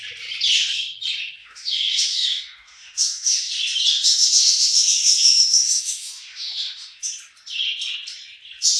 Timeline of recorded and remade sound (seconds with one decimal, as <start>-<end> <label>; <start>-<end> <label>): 0.0-1.4 recorded; 1.4-3.5 remade; 3.5-3.9 recorded; 3.9-7.1 remade; 7.1-8.8 recorded